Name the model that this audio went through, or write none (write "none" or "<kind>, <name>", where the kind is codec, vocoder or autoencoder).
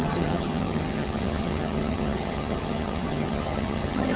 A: vocoder, HiFi-GAN